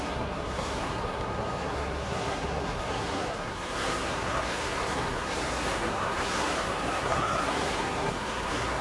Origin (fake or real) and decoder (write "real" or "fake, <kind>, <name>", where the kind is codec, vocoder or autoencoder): fake, codec, SNAC